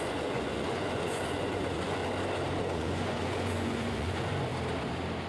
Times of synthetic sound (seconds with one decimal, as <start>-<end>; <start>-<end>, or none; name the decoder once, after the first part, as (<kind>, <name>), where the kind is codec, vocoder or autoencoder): 0.0-2.0 (vocoder, Vocos); 2.6-4.5